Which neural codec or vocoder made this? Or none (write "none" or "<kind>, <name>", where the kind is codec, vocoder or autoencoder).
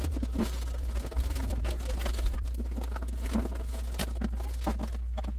none